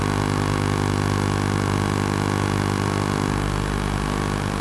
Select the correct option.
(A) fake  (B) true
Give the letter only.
B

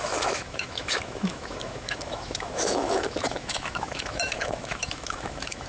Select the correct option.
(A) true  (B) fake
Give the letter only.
B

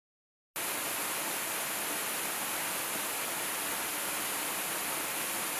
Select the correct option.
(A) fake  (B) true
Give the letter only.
B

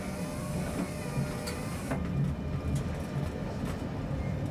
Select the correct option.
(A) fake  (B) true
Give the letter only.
B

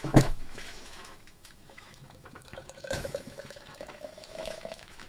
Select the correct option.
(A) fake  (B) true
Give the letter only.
A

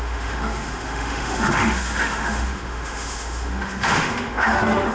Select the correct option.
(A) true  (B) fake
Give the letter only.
B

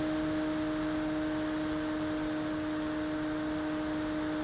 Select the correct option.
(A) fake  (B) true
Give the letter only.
B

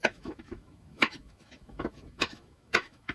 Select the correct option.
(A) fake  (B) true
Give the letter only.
A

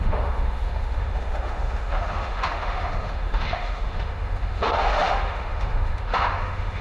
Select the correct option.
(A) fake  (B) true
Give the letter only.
A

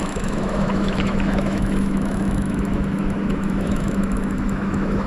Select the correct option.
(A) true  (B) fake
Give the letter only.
B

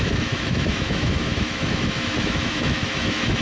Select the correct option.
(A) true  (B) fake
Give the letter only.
B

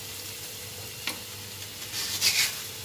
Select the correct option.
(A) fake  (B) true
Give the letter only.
B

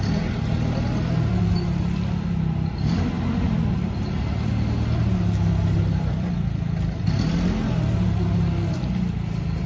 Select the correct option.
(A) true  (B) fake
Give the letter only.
A